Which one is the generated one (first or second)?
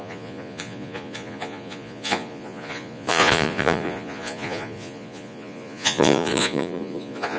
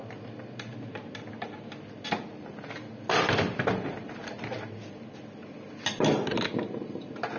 first